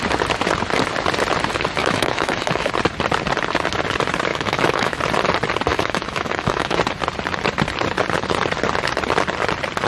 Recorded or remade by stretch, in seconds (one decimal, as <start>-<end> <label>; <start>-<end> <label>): 0.0-1.8 recorded; 1.8-2.7 remade; 2.7-4.3 recorded; 4.3-5.0 remade; 5.0-5.7 recorded; 5.7-6.8 remade; 6.8-9.9 recorded